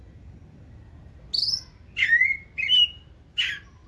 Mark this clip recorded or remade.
recorded